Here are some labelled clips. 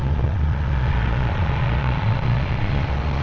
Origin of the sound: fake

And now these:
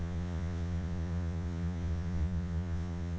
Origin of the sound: fake